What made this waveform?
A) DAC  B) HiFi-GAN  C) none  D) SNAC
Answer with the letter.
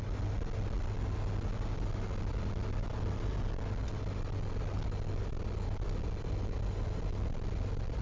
C